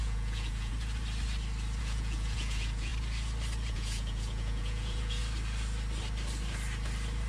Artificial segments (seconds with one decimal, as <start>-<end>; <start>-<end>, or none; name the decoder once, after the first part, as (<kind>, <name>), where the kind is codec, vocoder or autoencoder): 0.0-0.7 (vocoder, Vocos); 1.8-2.9; 3.7-5.2